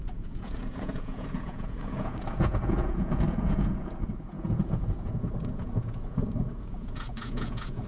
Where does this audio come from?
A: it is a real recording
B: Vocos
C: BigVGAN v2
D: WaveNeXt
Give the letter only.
B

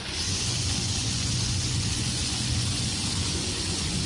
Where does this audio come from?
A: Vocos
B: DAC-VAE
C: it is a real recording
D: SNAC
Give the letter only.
A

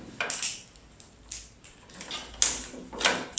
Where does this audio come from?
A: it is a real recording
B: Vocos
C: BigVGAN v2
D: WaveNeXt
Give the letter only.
A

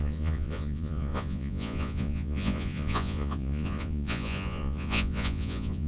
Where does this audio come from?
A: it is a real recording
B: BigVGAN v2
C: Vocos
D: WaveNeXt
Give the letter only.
C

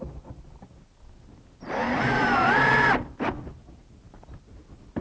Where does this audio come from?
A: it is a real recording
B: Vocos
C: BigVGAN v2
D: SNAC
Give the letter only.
A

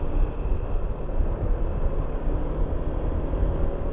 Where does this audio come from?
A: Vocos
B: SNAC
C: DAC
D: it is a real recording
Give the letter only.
D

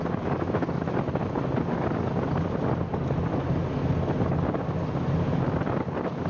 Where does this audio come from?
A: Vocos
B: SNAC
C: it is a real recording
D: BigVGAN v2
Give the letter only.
C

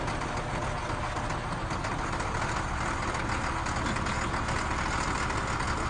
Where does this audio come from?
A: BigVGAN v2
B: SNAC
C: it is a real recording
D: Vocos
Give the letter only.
C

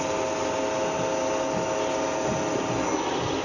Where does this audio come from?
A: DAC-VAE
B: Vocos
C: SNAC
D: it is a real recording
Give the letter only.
D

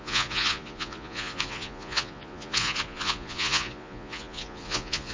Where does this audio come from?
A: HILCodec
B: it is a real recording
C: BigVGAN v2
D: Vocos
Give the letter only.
D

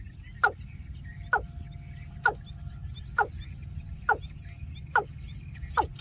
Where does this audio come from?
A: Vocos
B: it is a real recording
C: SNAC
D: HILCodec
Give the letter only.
B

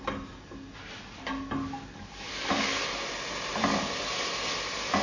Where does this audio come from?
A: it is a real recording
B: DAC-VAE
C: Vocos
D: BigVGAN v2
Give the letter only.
A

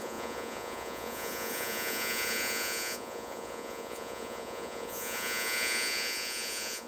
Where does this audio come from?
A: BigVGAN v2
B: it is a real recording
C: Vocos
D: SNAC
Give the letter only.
C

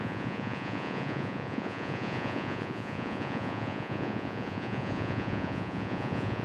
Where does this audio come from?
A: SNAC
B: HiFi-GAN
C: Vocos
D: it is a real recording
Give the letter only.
C